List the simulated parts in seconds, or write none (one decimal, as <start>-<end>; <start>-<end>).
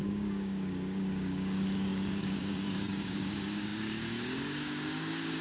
0.0-5.4